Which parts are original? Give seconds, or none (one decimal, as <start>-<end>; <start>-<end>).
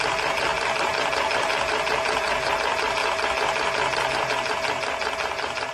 0.0-5.7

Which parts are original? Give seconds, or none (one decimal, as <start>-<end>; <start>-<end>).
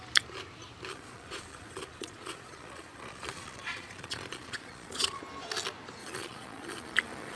0.0-0.9; 5.2-6.0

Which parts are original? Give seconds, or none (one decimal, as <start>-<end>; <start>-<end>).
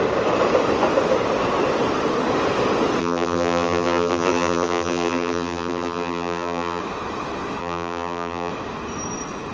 0.0-3.0; 6.8-7.6; 8.5-9.5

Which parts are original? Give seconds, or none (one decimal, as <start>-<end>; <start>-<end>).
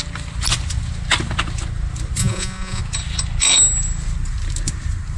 0.0-2.2; 2.8-5.2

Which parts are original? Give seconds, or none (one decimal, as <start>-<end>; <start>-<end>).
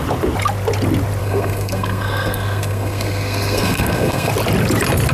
0.0-1.2; 4.3-5.1